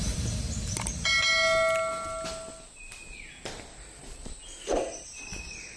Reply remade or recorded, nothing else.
recorded